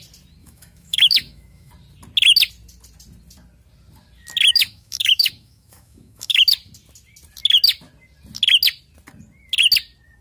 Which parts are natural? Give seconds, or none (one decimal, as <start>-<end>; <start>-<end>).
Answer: 0.0-0.4; 1.7-4.5; 6.4-10.2

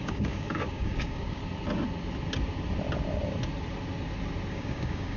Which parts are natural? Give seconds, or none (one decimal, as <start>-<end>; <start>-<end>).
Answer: 1.4-4.5

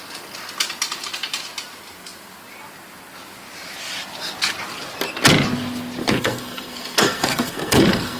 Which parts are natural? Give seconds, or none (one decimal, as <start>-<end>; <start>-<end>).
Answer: 0.0-6.0